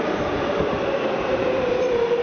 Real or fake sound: fake